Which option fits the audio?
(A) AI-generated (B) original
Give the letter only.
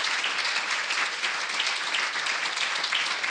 B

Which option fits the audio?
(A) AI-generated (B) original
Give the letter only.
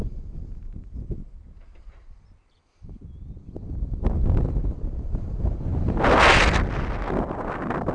B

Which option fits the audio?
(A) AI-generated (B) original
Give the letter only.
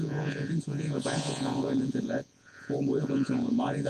A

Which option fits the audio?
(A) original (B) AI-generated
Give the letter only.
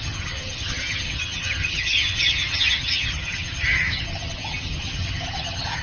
B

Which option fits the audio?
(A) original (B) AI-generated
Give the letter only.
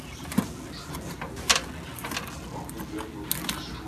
A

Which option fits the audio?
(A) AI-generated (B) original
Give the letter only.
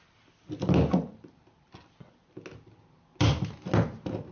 B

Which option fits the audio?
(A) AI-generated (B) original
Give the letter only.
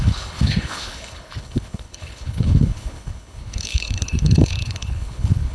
A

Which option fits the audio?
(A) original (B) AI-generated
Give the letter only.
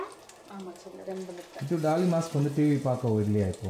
A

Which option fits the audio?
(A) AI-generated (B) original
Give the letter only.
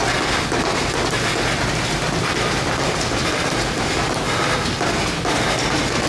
B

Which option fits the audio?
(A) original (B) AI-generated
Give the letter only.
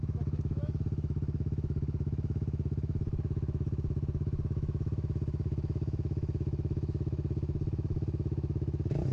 B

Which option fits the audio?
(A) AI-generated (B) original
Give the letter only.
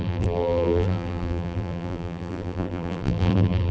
A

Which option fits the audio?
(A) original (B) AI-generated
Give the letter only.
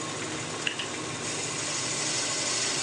A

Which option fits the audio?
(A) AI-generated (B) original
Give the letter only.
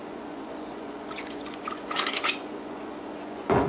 A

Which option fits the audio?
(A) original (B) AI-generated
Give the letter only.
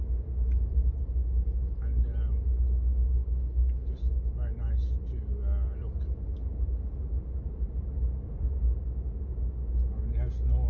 A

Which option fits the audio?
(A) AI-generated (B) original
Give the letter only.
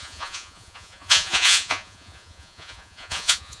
A